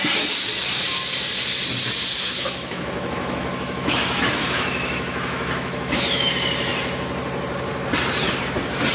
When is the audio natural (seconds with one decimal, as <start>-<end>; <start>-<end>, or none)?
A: 0.0-2.1; 6.3-8.9